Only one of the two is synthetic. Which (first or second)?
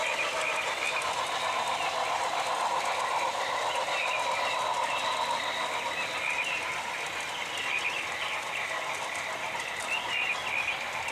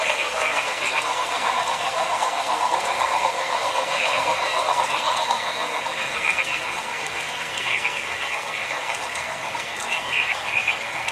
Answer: second